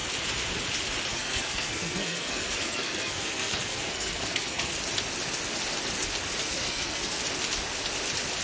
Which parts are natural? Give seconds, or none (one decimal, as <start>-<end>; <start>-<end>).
0.0-1.1; 4.7-6.4; 7.2-8.4

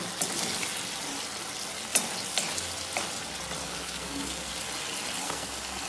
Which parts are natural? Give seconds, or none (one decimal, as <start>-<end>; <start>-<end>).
0.0-3.6; 4.5-5.2

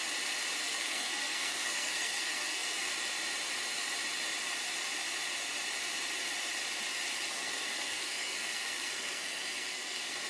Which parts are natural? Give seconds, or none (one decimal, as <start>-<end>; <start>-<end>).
0.0-0.6; 2.9-7.3

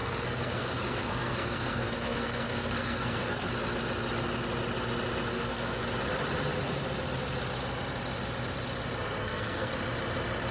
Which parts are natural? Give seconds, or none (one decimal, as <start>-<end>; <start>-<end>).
3.5-5.3; 5.8-9.2; 9.7-10.5

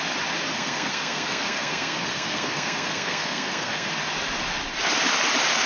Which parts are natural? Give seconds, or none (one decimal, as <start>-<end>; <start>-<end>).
0.0-0.5; 3.9-5.7

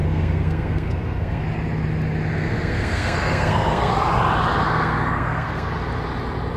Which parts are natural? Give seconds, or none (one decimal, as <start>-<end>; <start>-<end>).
1.4-2.4; 3.9-4.6; 5.7-6.6

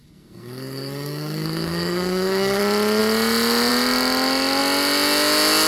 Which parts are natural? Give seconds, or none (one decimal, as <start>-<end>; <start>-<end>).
2.6-5.7

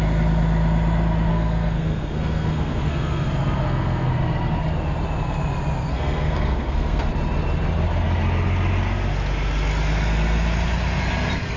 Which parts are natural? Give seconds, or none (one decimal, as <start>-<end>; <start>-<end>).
0.0-1.3; 4.1-5.9; 7.1-11.6